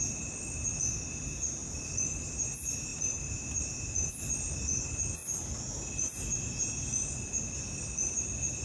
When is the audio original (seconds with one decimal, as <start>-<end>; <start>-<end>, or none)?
0.0-8.6